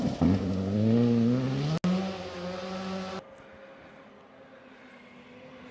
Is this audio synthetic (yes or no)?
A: no